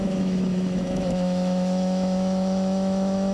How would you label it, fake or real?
fake